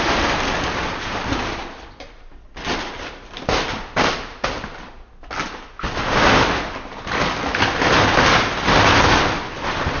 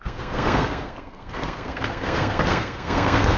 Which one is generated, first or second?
second